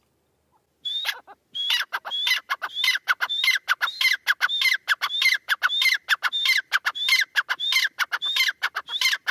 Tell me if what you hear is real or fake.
real